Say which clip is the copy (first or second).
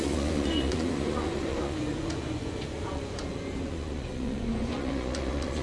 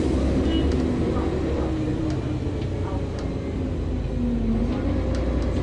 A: first